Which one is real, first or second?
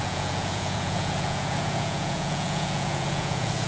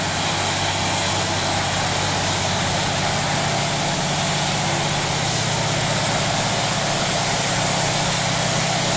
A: second